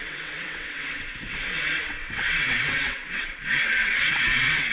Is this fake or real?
fake